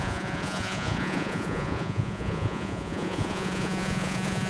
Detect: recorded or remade remade